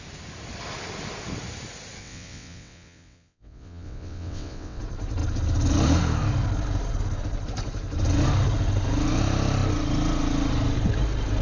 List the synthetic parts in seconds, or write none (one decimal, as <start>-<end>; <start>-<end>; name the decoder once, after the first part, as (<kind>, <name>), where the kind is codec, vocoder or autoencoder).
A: 2.0-4.8 (vocoder, WaveNeXt)